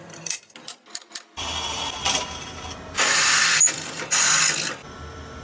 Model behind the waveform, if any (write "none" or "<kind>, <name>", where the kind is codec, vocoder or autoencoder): none